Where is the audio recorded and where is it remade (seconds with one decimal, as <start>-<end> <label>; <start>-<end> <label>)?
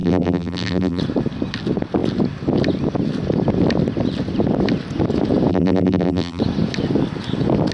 0.0-1.0 remade; 1.0-5.5 recorded; 5.5-6.4 remade; 6.4-7.7 recorded